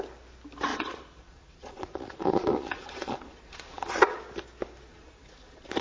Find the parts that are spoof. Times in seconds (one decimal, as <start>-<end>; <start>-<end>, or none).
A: 0.7-4.2; 4.9-5.8